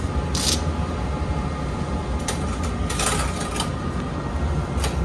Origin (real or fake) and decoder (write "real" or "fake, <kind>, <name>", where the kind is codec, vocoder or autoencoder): real